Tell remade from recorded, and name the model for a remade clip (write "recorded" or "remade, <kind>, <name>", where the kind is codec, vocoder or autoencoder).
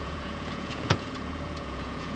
remade, vocoder, Vocos